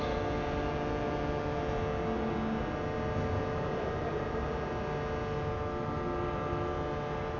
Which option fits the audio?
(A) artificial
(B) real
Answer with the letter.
B